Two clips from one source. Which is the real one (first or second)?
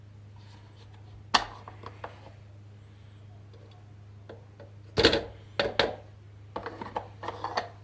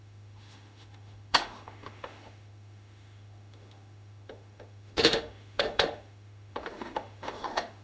first